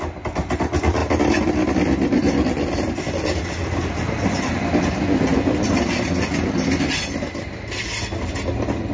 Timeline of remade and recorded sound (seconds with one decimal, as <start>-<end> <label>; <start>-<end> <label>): 0.0-8.9 recorded